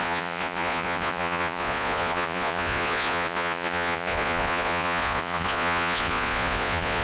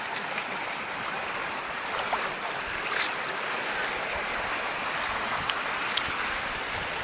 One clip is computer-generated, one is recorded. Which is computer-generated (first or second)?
first